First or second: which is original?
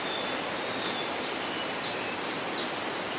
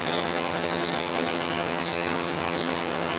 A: first